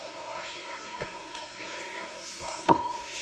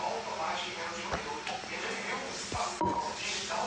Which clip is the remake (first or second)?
first